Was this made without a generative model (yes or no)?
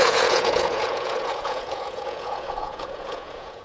no